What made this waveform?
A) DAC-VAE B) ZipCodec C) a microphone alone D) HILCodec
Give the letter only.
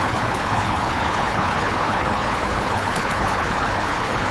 D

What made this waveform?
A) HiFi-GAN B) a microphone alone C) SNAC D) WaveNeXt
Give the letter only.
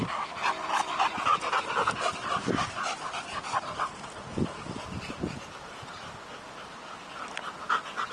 B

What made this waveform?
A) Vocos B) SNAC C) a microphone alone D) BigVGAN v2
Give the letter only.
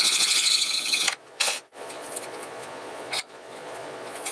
A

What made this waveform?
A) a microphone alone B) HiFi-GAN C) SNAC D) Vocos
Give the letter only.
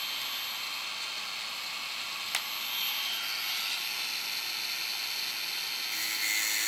A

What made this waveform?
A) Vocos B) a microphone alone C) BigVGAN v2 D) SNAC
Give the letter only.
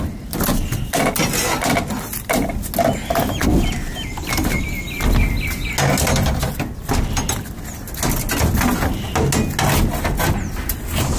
B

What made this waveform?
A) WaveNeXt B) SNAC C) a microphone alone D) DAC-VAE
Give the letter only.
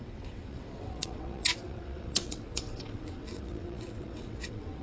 A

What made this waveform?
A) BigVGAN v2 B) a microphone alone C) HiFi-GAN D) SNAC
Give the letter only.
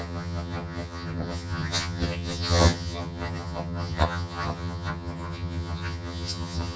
C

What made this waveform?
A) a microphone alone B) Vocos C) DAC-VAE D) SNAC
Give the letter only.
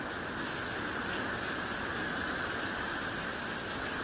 A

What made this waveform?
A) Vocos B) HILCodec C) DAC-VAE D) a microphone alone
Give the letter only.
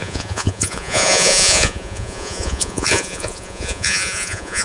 A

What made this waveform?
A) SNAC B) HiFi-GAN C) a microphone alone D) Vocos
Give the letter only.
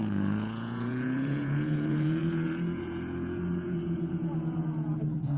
D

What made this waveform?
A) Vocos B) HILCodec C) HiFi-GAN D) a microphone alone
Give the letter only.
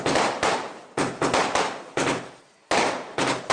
D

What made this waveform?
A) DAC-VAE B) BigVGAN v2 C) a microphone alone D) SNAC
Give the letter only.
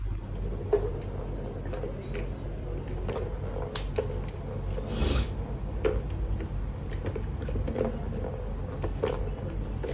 C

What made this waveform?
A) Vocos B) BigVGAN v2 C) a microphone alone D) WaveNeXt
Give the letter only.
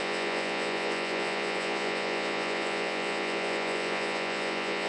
A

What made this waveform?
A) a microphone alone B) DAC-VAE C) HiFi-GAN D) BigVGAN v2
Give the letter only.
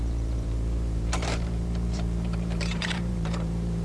D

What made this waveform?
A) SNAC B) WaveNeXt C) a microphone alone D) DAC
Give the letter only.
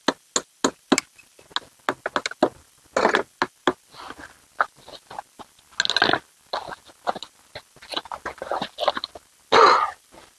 C